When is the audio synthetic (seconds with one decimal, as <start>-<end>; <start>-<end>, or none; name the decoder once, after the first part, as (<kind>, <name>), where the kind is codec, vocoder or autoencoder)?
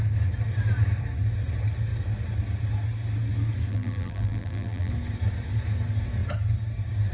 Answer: 3.7-4.9 (vocoder, BigVGAN v2)